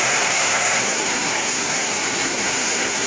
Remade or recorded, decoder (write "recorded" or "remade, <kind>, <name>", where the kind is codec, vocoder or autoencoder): remade, codec, SNAC